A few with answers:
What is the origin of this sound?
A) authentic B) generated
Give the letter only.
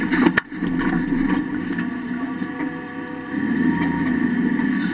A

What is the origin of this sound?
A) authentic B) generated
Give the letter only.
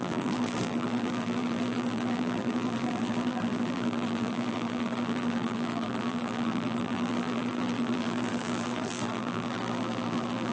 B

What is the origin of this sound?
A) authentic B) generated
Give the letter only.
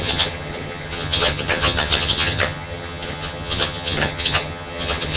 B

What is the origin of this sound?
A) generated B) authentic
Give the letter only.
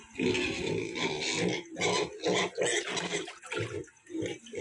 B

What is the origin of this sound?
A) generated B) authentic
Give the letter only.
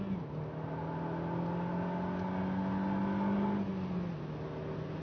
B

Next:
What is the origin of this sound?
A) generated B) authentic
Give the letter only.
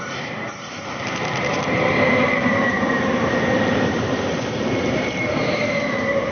A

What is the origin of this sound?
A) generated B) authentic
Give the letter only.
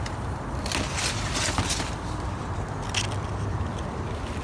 B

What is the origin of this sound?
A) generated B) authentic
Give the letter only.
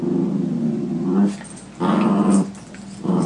B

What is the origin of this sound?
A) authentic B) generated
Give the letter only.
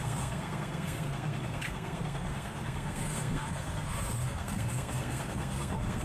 B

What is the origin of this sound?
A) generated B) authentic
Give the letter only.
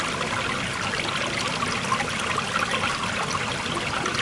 B